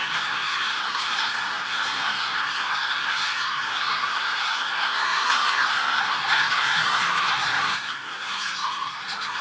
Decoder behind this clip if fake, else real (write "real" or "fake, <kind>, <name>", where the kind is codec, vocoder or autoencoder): fake, codec, SNAC